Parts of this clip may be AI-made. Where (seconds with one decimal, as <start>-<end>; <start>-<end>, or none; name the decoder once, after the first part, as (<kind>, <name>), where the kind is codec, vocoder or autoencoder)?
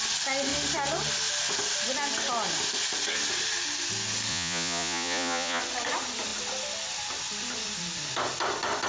4.3-5.6 (vocoder, Vocos)